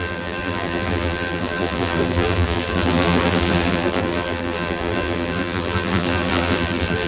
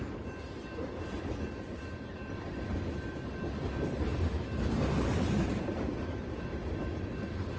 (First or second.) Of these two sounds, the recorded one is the second